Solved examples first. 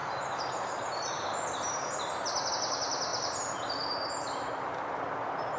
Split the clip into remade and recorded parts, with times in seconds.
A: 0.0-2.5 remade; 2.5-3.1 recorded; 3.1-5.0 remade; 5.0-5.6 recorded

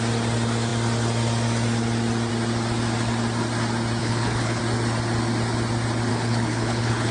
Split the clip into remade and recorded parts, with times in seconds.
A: 0.0-4.0 recorded; 4.0-4.6 remade; 4.6-6.1 recorded; 6.1-7.1 remade